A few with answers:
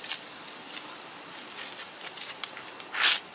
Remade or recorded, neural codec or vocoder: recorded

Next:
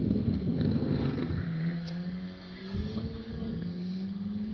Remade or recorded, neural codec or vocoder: remade, codec, SNAC